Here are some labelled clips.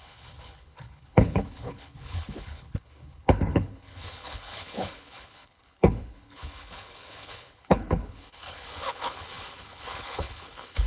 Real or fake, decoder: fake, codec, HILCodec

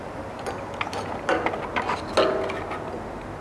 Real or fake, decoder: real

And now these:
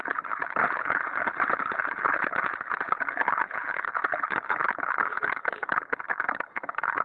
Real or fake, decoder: fake, codec, HILCodec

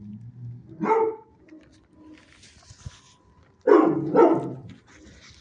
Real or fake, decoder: real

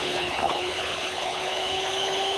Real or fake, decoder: fake, codec, HILCodec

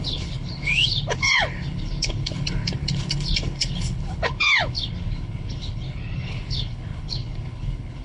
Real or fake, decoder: fake, codec, HILCodec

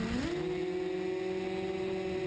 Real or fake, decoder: real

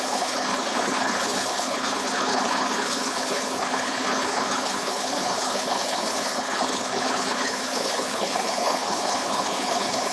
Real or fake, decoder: fake, codec, HILCodec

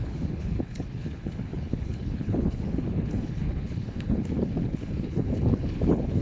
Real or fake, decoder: fake, codec, HILCodec